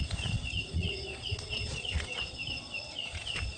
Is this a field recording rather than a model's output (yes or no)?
no